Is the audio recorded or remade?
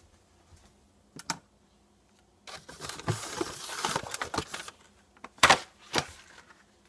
recorded